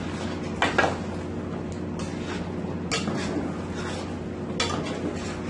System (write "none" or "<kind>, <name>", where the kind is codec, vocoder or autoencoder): none